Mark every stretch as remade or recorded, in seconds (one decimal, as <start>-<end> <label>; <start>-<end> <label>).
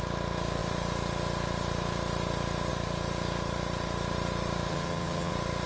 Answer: 0.0-4.7 recorded; 4.7-5.3 remade; 5.3-5.7 recorded